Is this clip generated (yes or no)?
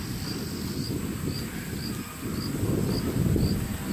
no